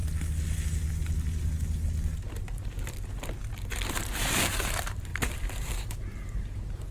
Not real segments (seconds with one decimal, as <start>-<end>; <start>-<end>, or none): 3.9-6.9